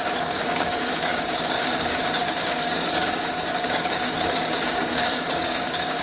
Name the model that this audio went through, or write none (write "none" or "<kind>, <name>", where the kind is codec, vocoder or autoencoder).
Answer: codec, DAC